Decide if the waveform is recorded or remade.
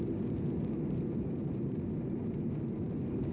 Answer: recorded